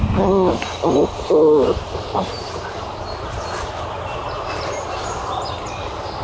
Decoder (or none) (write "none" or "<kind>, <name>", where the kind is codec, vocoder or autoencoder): none